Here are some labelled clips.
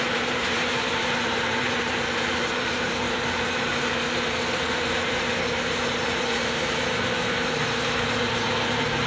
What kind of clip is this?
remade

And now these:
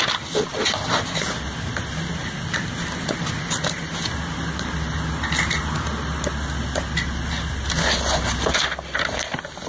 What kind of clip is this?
recorded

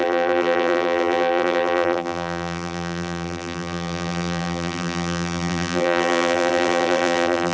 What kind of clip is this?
remade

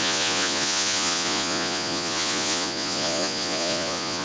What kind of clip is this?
remade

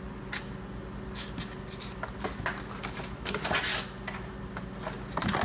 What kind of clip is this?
recorded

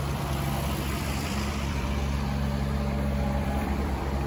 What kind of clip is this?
remade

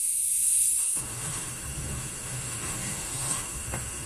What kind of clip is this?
remade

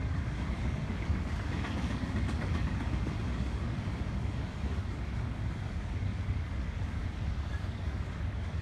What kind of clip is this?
remade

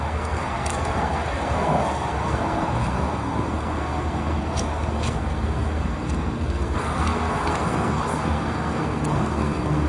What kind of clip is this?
remade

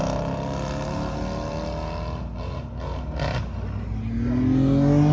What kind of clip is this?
recorded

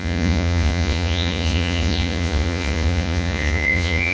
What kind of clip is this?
remade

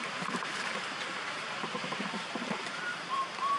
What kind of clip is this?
remade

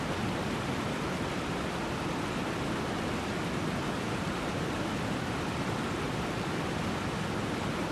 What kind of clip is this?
recorded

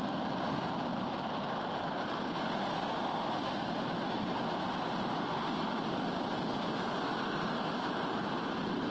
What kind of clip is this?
recorded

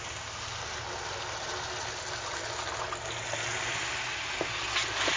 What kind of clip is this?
recorded